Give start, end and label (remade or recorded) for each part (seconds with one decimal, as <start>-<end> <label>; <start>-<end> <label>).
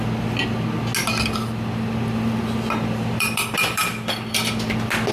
0.0-1.0 recorded; 1.0-4.1 remade; 4.1-5.1 recorded